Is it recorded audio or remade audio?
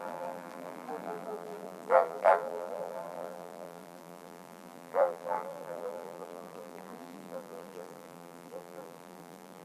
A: remade